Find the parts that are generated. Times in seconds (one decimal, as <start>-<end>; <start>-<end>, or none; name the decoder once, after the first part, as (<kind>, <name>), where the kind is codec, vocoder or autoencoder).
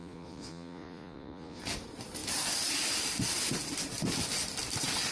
0.0-1.6 (vocoder, Vocos)